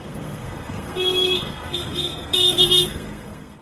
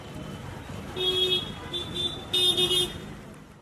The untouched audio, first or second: second